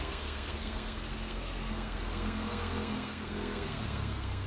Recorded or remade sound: remade